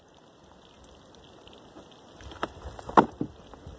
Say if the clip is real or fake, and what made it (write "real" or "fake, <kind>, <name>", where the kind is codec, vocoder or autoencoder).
real